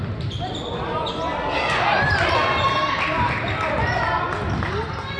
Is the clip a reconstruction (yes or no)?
no